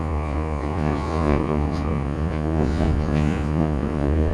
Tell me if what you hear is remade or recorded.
remade